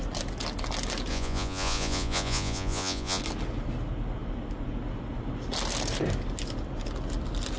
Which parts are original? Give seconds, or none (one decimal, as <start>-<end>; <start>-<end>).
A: 0.0-1.1; 3.2-7.6